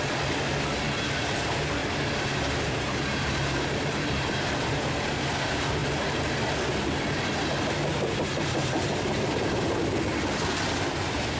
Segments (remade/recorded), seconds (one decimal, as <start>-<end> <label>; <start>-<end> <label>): 0.0-1.8 recorded; 1.8-4.4 remade; 4.4-7.9 recorded; 7.9-9.8 remade; 9.8-11.4 recorded